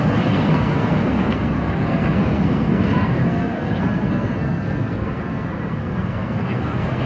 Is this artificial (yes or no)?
yes